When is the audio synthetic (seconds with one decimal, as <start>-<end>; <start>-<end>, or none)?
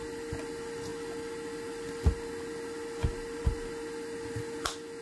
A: none